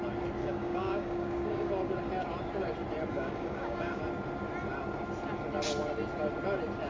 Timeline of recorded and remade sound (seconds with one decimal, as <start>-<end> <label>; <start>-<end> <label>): 0.0-0.4 recorded; 0.4-1.7 remade; 1.7-3.1 recorded; 3.1-4.0 remade; 4.0-6.9 recorded